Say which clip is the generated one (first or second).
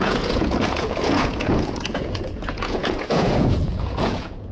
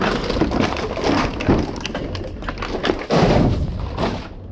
first